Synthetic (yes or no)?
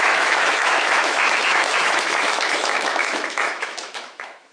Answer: yes